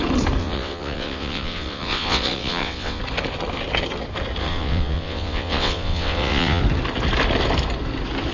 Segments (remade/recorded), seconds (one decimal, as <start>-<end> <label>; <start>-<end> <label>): 0.0-0.4 recorded; 0.4-3.0 remade; 3.0-4.4 recorded; 4.4-6.6 remade; 6.6-8.3 recorded